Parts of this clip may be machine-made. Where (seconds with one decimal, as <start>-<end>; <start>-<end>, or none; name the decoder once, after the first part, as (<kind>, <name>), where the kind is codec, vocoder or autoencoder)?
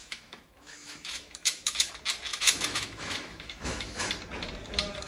0.0-1.9 (autoencoder, DAC-VAE); 2.3-4.1